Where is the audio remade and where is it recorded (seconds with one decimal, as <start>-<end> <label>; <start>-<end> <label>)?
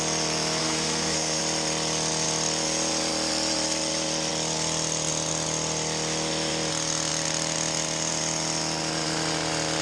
0.0-0.6 recorded; 0.6-1.4 remade; 1.4-9.8 recorded